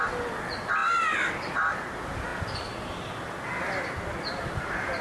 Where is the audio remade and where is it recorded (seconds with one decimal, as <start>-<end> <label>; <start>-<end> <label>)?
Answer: 0.0-5.0 recorded